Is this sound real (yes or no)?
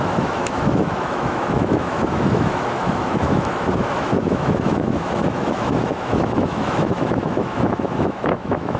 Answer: no